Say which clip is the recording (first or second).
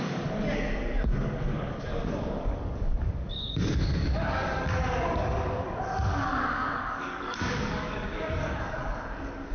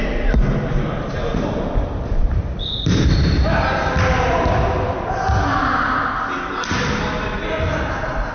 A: second